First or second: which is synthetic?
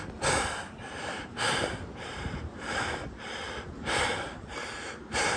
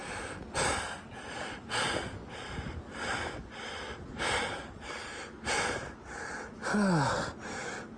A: first